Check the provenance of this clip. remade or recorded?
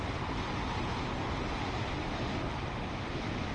recorded